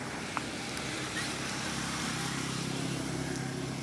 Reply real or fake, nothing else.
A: real